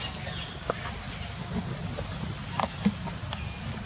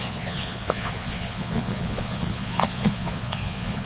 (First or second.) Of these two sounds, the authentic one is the first